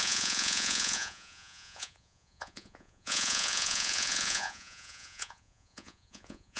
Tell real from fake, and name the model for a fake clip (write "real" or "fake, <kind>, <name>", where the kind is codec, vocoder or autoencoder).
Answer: fake, vocoder, Vocos